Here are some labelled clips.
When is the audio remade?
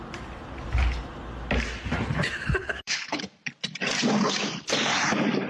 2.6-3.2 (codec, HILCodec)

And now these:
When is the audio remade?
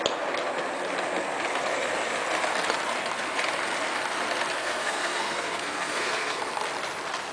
4.6-6.4 (codec, SNAC)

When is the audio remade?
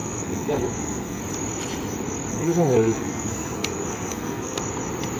0.0-1.2 (codec, SNAC); 2.3-4.6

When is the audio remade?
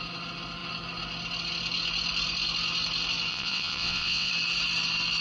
3.3-4.3 (vocoder, WaveNeXt)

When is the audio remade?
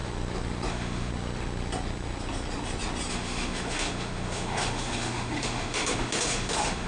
0.7-1.1 (autoencoder, DAC-VAE); 3.1-6.9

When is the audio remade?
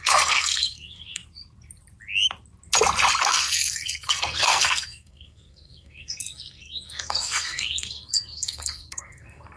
0.0-1.2 (codec, SNAC); 3.2-9.6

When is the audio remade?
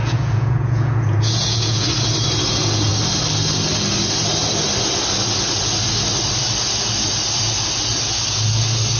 0.0-1.9 (vocoder, Vocos)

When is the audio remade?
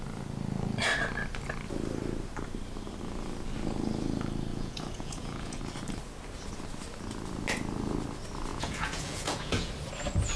4.5-5.6 (vocoder, Vocos); 8.5-9.7